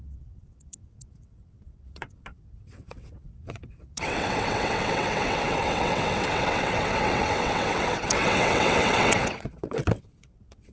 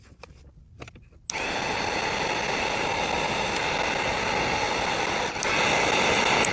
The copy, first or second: first